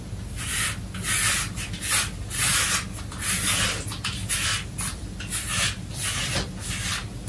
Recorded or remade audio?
recorded